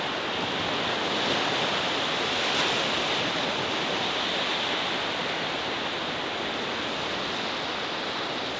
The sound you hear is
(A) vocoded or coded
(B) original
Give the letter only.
B